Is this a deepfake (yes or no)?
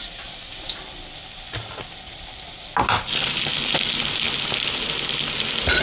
no